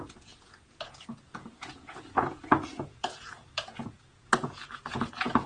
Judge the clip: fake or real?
fake